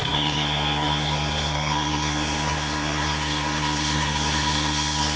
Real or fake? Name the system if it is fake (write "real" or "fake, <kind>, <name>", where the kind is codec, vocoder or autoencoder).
fake, codec, SNAC